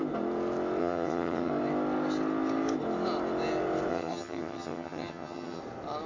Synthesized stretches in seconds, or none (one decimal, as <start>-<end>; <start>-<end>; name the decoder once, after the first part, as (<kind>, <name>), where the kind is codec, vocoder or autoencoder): 0.8-1.5 (vocoder, HiFi-GAN); 3.9-5.6